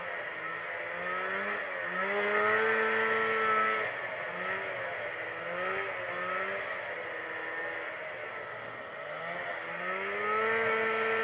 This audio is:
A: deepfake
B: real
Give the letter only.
B